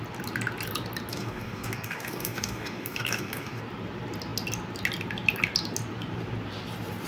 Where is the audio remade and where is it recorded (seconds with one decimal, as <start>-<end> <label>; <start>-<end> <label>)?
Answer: 0.0-1.1 recorded; 1.1-3.6 remade; 3.6-7.1 recorded